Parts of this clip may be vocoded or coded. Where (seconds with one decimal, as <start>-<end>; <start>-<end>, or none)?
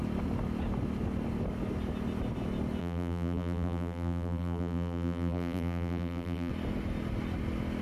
2.8-6.5